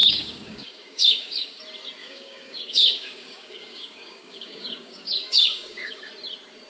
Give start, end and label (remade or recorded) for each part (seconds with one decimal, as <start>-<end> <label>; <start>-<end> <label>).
0.0-1.6 remade; 1.6-2.0 recorded; 2.0-6.0 remade; 6.0-6.7 recorded